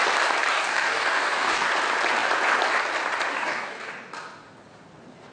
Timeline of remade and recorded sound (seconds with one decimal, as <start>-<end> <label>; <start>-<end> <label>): 0.0-0.5 recorded; 0.5-1.7 remade; 1.7-3.3 recorded; 3.3-3.9 remade; 3.9-5.3 recorded